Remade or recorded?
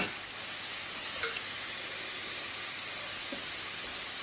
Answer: recorded